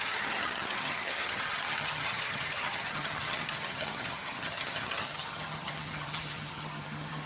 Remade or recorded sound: remade